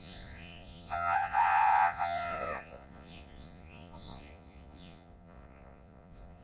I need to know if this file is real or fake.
fake